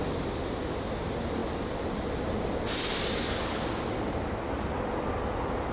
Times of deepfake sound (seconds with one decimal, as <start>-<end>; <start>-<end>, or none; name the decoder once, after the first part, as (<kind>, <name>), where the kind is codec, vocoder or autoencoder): none